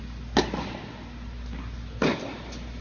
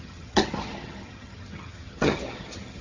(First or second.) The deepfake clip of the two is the second